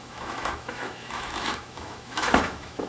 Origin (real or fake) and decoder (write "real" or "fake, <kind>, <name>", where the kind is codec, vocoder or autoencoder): fake, autoencoder, DAC-VAE